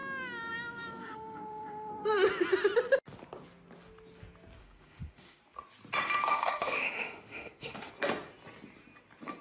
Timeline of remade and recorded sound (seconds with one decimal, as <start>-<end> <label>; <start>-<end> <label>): 0.0-1.0 recorded; 1.0-1.9 remade; 1.9-4.6 recorded; 4.6-5.4 remade; 5.4-6.3 recorded; 6.3-7.9 remade; 7.9-9.4 recorded